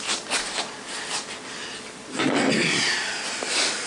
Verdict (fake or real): real